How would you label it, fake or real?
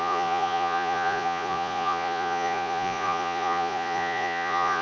fake